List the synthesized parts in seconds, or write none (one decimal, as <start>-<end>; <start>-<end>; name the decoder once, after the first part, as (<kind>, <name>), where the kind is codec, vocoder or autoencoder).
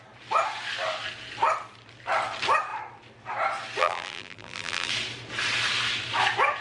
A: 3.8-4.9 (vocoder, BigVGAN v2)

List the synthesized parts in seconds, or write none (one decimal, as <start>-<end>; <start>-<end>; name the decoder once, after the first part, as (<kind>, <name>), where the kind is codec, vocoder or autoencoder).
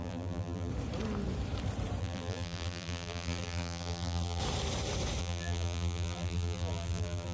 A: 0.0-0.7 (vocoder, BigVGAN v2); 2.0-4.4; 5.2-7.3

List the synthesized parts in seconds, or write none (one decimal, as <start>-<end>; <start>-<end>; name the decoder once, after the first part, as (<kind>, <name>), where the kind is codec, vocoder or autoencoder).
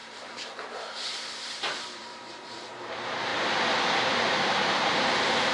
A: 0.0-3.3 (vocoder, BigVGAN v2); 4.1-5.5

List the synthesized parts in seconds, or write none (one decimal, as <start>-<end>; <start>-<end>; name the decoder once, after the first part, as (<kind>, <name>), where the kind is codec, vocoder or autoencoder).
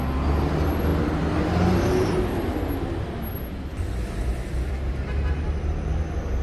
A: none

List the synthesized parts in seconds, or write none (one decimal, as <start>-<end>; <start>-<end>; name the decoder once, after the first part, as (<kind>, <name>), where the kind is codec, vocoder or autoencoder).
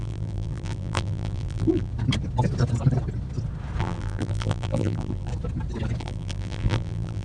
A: 0.0-1.9 (vocoder, BigVGAN v2); 3.8-5.3; 6.0-7.2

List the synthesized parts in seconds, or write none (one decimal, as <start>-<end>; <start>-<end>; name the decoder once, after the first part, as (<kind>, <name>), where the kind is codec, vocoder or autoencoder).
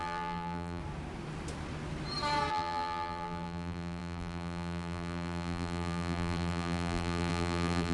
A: 0.0-0.8 (vocoder, BigVGAN v2); 2.5-7.9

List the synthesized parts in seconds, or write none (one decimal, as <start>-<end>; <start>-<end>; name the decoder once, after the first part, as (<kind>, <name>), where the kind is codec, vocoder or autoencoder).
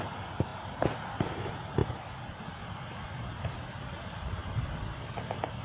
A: none